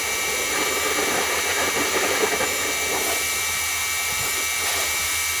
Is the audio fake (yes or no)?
yes